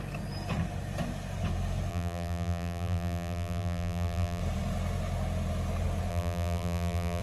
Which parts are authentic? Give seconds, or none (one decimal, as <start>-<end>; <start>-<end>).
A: 0.0-1.9; 4.4-6.1